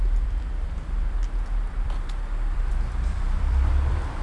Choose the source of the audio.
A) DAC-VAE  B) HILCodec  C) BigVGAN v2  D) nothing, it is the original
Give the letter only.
C